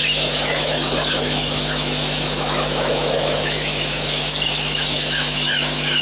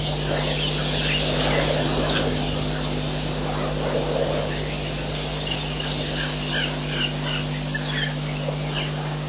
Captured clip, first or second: second